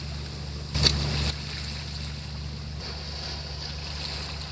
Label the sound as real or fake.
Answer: real